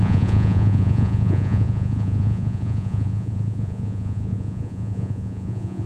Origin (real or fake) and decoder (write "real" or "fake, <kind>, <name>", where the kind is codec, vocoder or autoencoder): fake, vocoder, Vocos